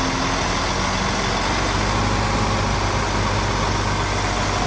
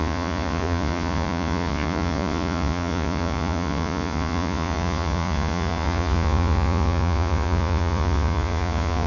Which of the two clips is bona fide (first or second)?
first